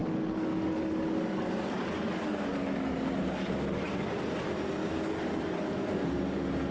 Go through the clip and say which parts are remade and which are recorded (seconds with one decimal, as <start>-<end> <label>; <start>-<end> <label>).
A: 0.0-3.5 remade; 3.5-4.8 recorded; 4.8-6.2 remade; 6.2-6.7 recorded